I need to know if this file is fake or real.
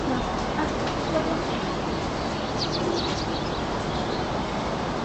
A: real